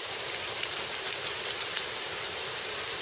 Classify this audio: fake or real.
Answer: fake